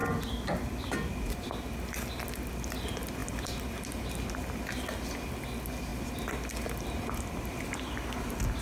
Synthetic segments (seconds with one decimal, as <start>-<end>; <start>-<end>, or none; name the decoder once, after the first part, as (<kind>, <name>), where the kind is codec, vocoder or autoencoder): none